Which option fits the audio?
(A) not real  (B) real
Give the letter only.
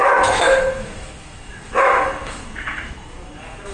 A